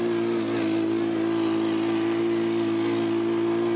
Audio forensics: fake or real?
real